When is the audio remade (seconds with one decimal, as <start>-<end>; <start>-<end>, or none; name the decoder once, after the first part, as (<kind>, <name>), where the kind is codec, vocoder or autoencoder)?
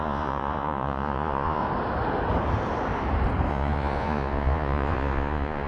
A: 0.0-1.6 (vocoder, Vocos); 3.5-5.7